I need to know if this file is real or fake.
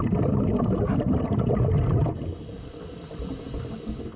real